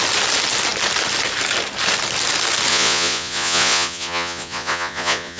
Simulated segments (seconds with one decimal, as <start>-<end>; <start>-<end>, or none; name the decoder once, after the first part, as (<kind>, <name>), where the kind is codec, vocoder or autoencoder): 2.7-5.4 (vocoder, Vocos)